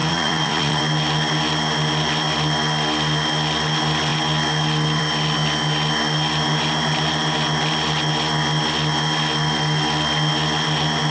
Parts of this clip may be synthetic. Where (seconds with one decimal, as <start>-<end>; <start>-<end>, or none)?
0.0-0.8